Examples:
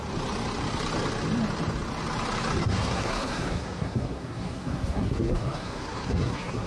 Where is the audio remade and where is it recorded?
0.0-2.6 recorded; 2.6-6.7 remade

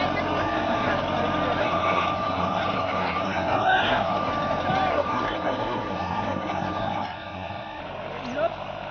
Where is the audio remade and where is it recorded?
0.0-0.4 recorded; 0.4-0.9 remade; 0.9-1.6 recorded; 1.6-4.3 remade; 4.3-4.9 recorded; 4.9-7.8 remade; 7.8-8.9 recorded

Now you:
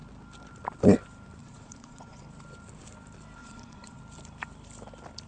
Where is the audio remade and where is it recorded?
0.0-1.4 recorded; 1.4-2.2 remade; 2.2-3.4 recorded; 3.4-4.0 remade; 4.0-5.3 recorded

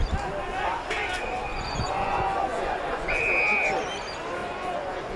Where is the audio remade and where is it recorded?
0.0-1.5 recorded; 1.5-3.2 remade; 3.2-4.4 recorded; 4.4-5.2 remade